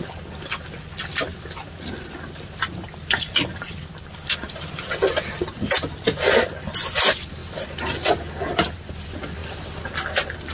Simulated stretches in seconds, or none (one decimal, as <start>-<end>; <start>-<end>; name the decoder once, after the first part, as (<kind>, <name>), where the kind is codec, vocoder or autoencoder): 1.3-4.6 (vocoder, BigVGAN v2); 7.4-8.3; 9.4-10.5